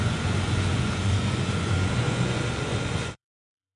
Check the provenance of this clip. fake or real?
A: fake